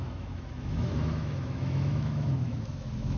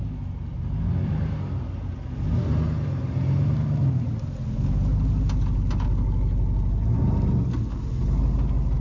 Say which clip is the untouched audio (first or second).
second